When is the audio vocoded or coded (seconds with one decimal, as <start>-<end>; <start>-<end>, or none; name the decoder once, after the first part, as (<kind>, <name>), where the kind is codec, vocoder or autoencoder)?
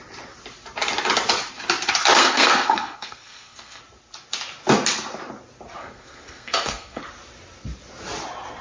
2.2-3.8 (codec, SNAC); 5.8-7.0